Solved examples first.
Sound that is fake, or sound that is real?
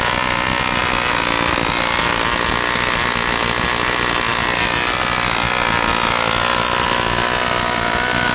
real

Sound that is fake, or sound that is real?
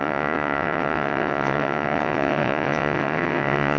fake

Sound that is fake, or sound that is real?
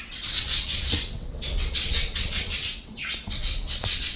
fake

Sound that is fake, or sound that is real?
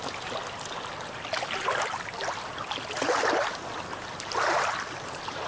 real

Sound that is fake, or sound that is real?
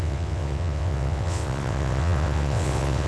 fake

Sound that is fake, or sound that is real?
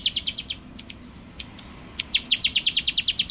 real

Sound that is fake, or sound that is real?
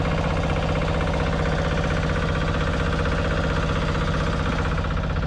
real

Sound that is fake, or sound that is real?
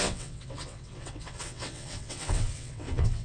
fake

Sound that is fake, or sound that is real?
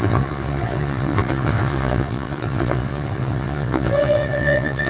fake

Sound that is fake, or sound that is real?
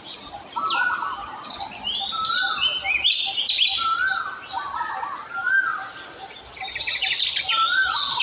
real